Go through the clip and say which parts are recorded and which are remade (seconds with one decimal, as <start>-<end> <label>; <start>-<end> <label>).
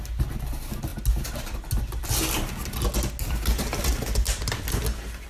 0.0-5.3 recorded